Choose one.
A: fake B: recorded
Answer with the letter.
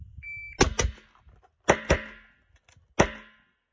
B